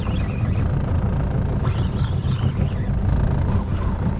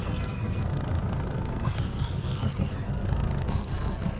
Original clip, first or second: first